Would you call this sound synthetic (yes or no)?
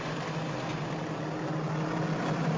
no